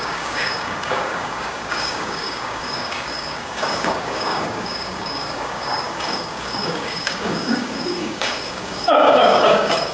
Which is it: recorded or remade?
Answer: remade